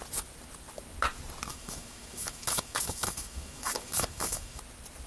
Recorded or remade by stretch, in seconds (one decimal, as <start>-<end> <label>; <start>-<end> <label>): 0.0-1.5 recorded; 1.5-4.6 remade; 4.6-5.1 recorded